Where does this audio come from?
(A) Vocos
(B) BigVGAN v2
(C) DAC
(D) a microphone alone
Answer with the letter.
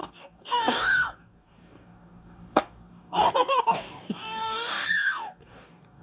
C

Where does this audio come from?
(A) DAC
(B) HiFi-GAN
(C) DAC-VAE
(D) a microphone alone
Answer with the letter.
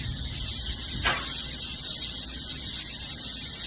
D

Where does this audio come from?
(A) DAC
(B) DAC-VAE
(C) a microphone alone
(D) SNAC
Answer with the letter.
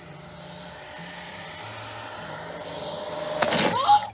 C